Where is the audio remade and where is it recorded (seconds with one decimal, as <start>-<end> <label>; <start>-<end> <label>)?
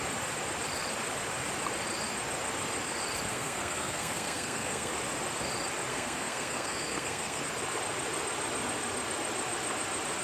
0.0-3.3 recorded; 3.3-4.9 remade; 4.9-5.9 recorded; 5.9-7.4 remade; 7.4-10.2 recorded